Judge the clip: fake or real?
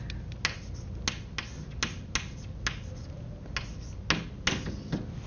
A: real